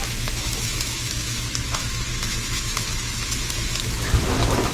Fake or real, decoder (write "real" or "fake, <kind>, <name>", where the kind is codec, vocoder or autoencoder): fake, autoencoder, DAC-VAE